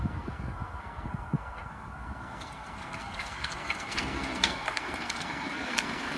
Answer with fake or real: fake